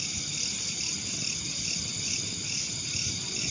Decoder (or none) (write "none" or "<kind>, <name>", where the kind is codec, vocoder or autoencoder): none